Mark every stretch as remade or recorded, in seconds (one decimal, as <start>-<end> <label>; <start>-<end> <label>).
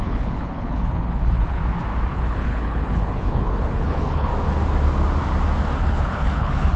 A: 0.0-1.6 remade; 1.6-2.1 recorded; 2.1-4.3 remade; 4.3-5.8 recorded; 5.8-6.8 remade